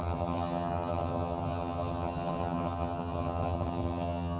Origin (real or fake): fake